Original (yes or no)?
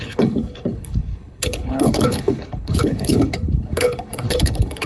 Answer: no